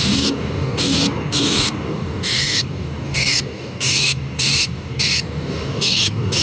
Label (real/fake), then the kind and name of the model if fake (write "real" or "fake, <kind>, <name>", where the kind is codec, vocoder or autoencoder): fake, codec, DAC